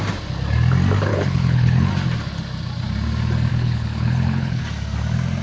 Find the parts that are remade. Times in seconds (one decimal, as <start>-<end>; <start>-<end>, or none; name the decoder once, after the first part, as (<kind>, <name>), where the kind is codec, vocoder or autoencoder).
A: 1.1-1.9 (codec, HILCodec); 3.5-4.6